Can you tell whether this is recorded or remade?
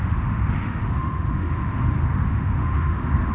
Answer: remade